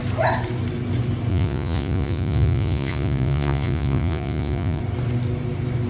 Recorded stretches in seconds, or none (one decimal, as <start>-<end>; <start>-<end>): 0.0-1.3; 4.8-5.9